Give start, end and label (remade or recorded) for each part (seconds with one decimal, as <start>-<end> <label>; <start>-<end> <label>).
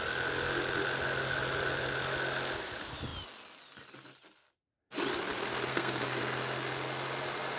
0.0-5.7 recorded; 5.7-6.2 remade; 6.2-7.6 recorded